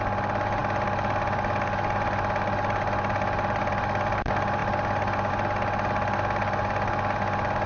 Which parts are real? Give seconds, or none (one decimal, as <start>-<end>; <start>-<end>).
0.0-7.7